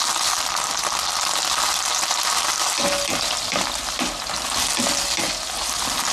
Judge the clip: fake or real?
real